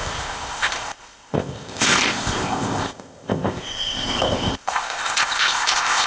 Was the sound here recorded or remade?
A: remade